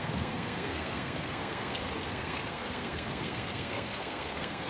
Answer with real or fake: fake